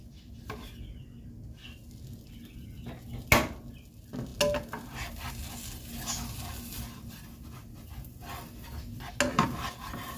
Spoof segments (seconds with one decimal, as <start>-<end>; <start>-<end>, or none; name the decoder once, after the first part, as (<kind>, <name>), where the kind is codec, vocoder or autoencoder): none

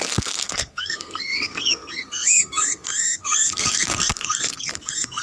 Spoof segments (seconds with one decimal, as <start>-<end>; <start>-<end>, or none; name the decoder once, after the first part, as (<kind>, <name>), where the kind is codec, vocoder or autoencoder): 0.0-5.2 (codec, SNAC)

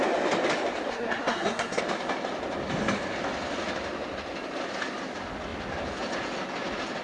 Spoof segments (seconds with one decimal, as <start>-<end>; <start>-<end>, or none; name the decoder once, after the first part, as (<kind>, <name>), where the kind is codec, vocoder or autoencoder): 0.9-1.8 (codec, SNAC)